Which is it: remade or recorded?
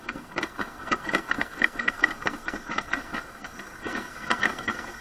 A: remade